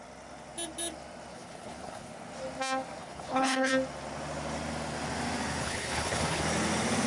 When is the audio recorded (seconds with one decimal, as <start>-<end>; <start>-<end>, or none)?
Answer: 0.0-1.3; 2.1-3.0; 3.7-5.6; 6.4-7.1